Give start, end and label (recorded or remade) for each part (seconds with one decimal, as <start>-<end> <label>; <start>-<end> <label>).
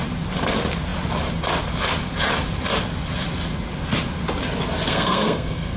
0.0-4.9 recorded; 4.9-5.8 remade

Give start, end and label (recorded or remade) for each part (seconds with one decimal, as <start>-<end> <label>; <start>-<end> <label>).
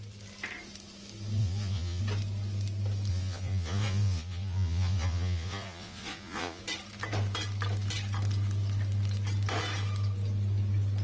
0.0-1.4 recorded; 1.4-2.0 remade; 2.0-3.1 recorded; 3.1-6.6 remade; 6.6-11.0 recorded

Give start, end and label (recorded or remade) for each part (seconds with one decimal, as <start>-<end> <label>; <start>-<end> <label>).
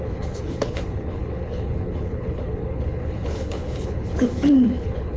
0.0-5.2 remade